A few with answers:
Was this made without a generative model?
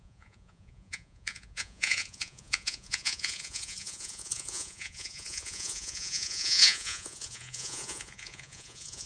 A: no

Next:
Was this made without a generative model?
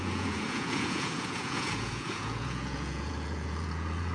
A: no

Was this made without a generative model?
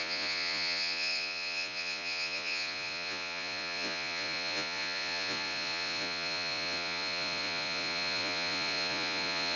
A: no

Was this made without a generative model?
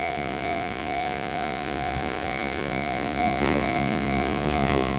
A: no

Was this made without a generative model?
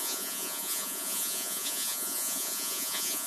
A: no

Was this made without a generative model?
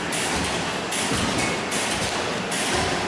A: yes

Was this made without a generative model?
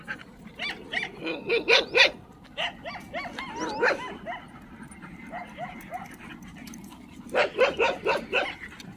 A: yes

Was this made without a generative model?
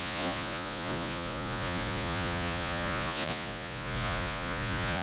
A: no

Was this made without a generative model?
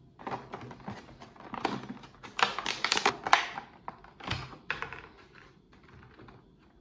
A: yes